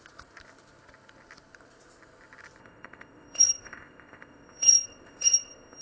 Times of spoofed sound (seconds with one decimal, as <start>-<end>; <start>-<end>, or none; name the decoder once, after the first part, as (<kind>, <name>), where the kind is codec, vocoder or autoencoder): 2.6-5.8 (codec, ZipCodec)